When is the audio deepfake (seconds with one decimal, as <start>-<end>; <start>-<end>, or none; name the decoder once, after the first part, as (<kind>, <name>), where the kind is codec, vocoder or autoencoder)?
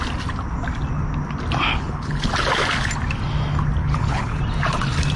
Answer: 1.7-2.3 (codec, HILCodec); 3.8-4.4